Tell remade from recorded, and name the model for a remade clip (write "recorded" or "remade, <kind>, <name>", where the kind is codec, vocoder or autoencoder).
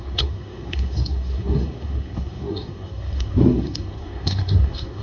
remade, codec, SNAC